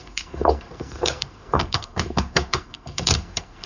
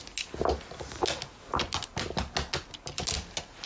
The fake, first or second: first